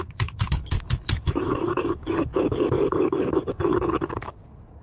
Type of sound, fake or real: fake